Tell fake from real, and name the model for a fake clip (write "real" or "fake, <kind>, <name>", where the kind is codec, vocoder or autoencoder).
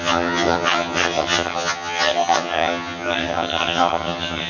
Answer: fake, vocoder, HiFi-GAN